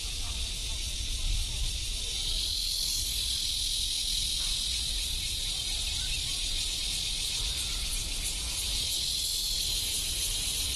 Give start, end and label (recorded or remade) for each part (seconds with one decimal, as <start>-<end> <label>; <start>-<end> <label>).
0.0-10.8 recorded